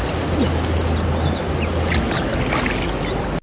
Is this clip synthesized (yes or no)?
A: no